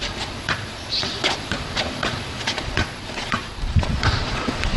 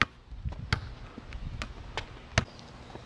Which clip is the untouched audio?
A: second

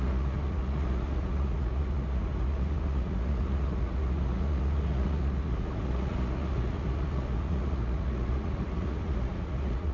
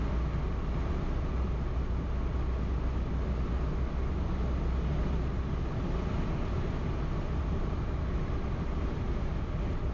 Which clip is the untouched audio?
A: second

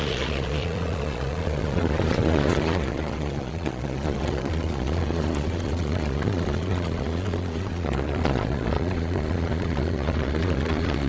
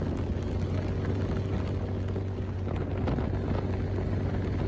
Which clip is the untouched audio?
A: second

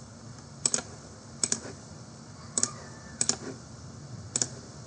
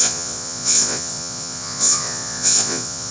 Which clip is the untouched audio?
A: first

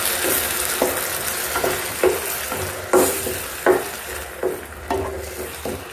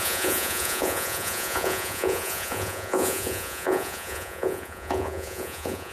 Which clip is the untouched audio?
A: first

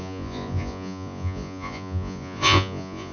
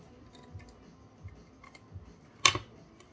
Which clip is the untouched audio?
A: second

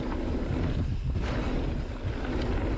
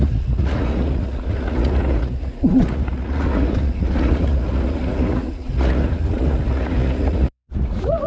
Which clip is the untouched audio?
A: first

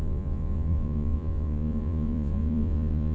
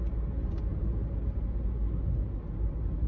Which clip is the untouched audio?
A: second